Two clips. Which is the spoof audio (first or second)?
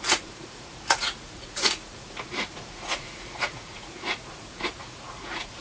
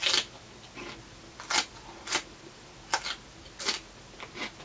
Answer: first